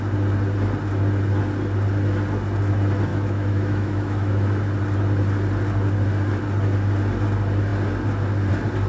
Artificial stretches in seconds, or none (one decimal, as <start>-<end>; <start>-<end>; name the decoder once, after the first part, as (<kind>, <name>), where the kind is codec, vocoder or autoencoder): 3.1-4.6 (autoencoder, DAC-VAE)